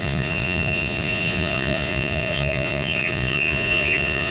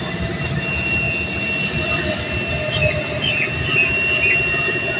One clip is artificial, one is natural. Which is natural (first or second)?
second